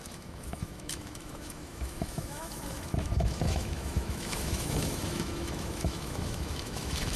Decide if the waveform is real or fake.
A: fake